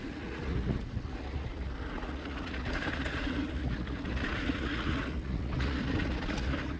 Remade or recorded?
remade